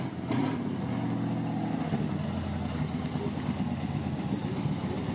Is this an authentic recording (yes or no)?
yes